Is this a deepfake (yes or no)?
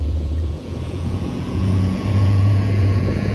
yes